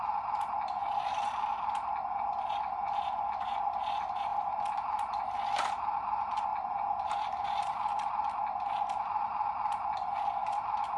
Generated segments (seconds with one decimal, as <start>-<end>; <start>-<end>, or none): 4.3-5.2